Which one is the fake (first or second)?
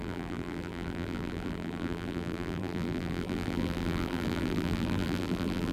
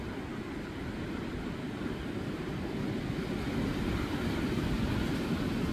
first